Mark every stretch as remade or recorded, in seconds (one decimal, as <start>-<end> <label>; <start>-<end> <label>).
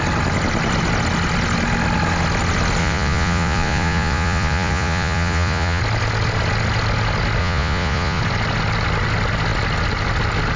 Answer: 0.0-2.8 recorded; 2.8-5.8 remade; 5.8-7.4 recorded; 7.4-8.2 remade; 8.2-10.6 recorded